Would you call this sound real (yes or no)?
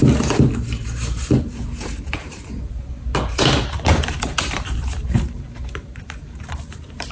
no